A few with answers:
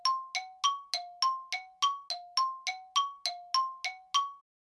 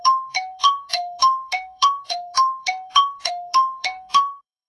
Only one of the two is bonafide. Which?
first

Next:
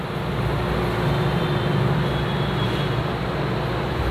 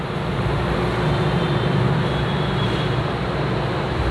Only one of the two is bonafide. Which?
first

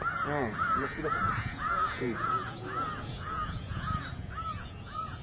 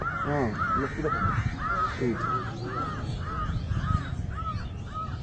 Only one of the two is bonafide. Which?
second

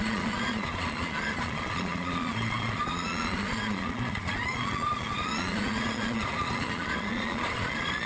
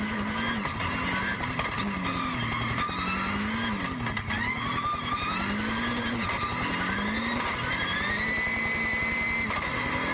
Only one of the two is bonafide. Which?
second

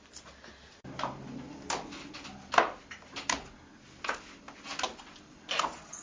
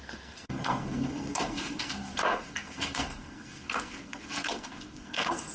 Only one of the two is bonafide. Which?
first